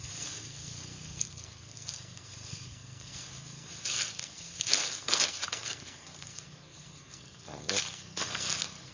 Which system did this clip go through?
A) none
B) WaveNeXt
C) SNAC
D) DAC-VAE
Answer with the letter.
C